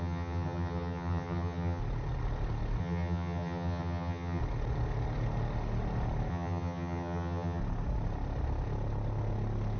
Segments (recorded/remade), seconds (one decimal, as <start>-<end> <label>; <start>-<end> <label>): 0.0-1.8 remade; 1.8-2.8 recorded; 2.8-4.4 remade; 4.4-6.3 recorded; 6.3-7.6 remade; 7.6-9.8 recorded